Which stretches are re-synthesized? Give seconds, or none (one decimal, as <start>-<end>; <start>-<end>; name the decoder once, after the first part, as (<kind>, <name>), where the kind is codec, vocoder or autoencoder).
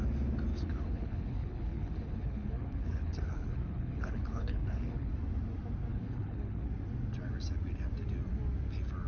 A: 0.5-5.1 (codec, HILCodec); 5.9-6.7